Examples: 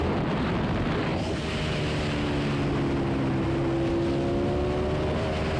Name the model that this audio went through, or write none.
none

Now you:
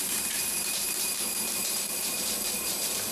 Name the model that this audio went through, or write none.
vocoder, BigVGAN v2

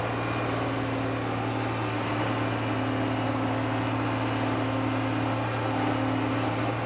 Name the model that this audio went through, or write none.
none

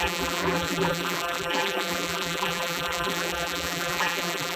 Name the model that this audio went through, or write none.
vocoder, BigVGAN v2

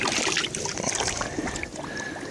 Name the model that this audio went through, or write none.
vocoder, BigVGAN v2